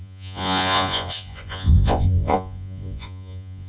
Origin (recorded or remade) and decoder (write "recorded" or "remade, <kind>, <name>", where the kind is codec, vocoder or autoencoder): remade, vocoder, Vocos